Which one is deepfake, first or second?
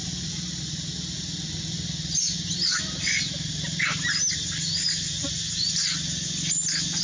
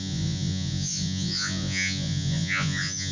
second